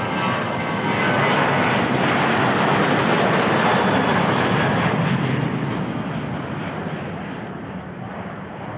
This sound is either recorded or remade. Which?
recorded